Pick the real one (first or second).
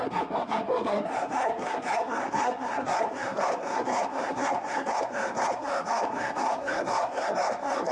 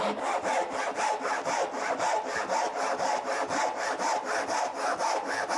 second